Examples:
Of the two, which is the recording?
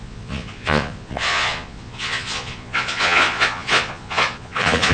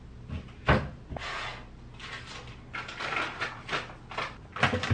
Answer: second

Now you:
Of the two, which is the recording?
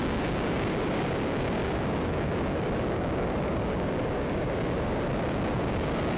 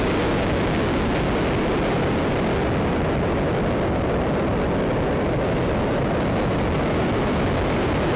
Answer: second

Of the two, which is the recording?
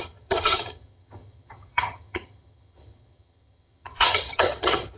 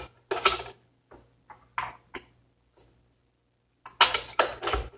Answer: second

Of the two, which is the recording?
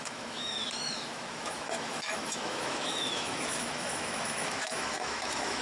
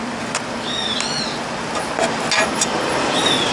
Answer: second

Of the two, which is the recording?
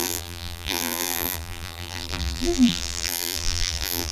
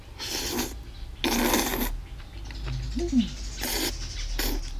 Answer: second